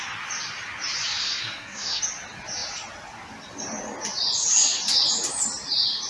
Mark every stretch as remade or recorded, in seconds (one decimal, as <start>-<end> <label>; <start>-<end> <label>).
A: 0.0-1.2 recorded; 1.2-2.0 remade; 2.0-6.1 recorded